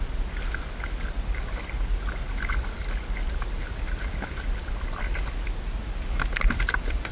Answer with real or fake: real